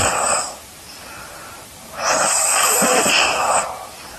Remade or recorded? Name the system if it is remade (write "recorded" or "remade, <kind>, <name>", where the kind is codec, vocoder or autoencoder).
remade, vocoder, BigVGAN v2